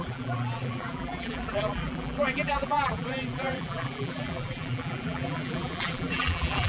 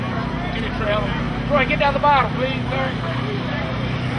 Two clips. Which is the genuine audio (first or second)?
second